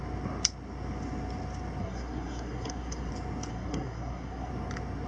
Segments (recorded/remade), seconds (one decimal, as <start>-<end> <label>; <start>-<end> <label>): 0.0-1.8 recorded; 1.8-3.1 remade; 3.1-3.5 recorded; 3.5-4.5 remade; 4.5-5.1 recorded